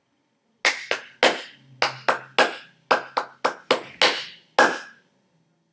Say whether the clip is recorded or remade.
recorded